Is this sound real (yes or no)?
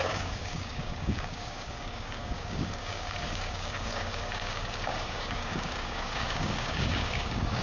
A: no